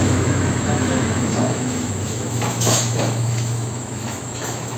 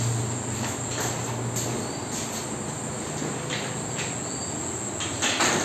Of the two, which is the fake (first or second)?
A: first